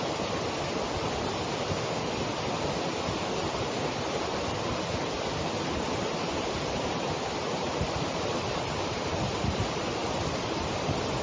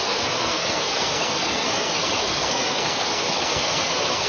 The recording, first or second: first